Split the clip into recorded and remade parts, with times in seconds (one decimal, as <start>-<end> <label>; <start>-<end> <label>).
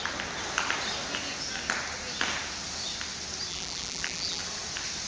0.0-3.5 recorded; 3.5-4.4 remade; 4.4-5.1 recorded